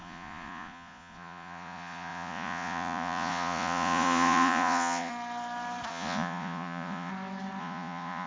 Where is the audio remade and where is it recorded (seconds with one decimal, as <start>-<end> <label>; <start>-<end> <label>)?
0.0-5.1 remade; 5.1-5.9 recorded; 5.9-7.1 remade; 7.1-7.6 recorded; 7.6-8.3 remade

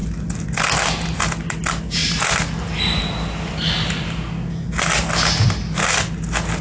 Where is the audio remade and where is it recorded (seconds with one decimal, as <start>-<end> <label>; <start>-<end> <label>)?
0.0-6.6 recorded

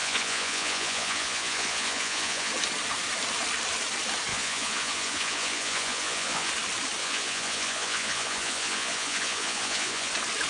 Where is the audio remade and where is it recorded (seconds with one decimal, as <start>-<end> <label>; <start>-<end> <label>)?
0.0-2.5 remade; 2.5-4.3 recorded; 4.3-6.5 remade; 6.5-7.0 recorded; 7.0-10.1 remade; 10.1-10.5 recorded

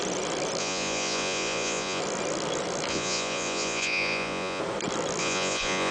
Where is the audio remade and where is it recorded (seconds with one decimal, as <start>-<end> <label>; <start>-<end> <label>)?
0.0-0.6 recorded; 0.6-2.0 remade; 2.0-2.9 recorded; 2.9-4.6 remade; 4.6-5.2 recorded; 5.2-5.9 remade

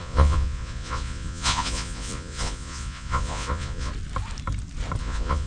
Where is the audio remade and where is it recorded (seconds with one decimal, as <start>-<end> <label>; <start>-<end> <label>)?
0.0-3.9 remade; 3.9-5.0 recorded; 5.0-5.5 remade

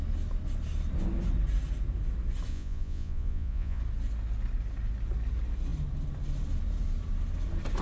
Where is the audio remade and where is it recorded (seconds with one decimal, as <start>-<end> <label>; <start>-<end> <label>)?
0.0-2.5 recorded; 2.5-3.8 remade; 3.8-7.8 recorded

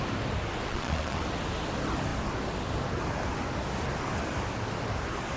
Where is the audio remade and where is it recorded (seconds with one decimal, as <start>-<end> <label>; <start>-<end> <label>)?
0.0-0.7 recorded; 0.7-1.2 remade; 1.2-5.4 recorded

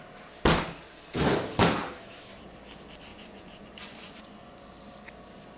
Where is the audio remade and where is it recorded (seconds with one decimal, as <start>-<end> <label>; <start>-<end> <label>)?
0.0-3.1 recorded; 3.1-4.6 remade; 4.6-5.6 recorded